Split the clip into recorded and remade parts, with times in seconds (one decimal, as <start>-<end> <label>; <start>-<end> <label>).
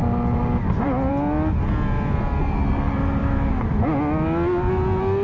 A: 0.0-3.2 recorded; 3.2-3.8 remade; 3.8-5.2 recorded